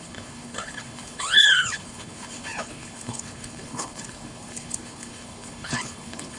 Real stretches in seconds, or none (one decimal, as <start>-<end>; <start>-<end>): none